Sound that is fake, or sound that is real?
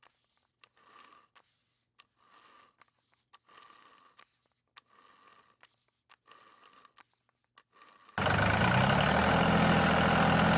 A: real